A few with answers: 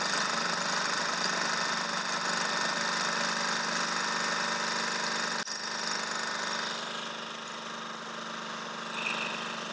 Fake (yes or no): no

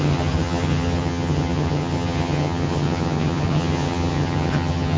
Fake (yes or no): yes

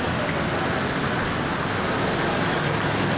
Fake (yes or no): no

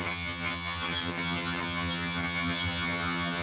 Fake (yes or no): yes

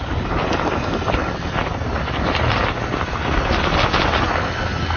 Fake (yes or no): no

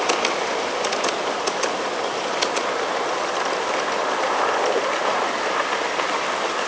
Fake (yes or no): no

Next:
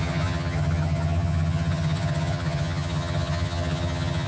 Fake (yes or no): yes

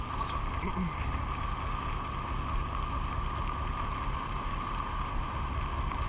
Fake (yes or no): no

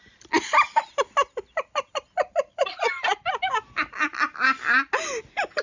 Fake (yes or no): no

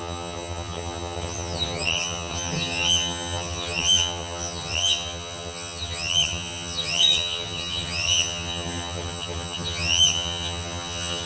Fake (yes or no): yes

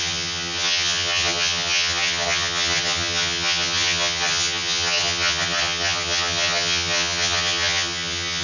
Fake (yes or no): yes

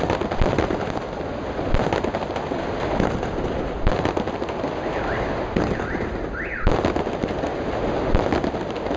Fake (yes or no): no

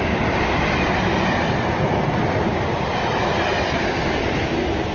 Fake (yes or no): no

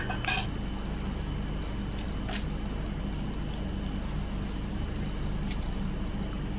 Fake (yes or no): no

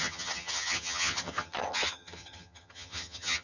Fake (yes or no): yes